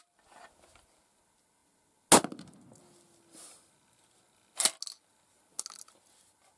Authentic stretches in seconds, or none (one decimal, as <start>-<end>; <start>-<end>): 0.0-6.6